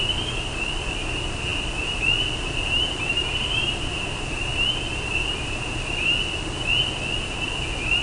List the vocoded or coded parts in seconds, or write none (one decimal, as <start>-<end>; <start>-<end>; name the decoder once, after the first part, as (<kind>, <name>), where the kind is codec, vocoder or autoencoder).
none